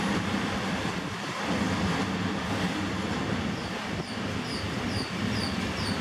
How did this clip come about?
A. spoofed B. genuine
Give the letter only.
B